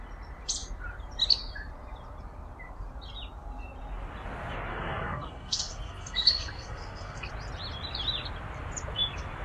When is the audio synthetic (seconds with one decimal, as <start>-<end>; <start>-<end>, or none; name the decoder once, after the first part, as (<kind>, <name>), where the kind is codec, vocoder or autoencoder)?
4.7-7.3 (codec, SNAC)